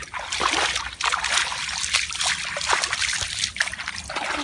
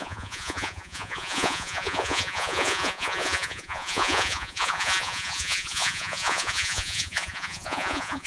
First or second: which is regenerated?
second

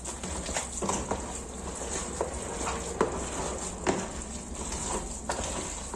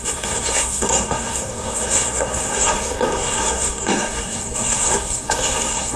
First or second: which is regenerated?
second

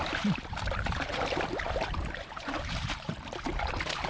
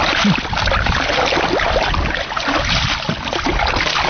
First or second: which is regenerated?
first